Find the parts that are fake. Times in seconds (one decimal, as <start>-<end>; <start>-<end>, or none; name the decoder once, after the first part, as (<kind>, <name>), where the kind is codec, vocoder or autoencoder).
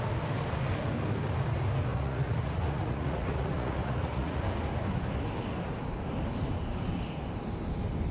1.9-4.4 (vocoder, Vocos)